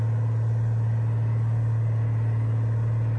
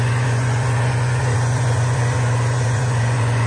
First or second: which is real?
first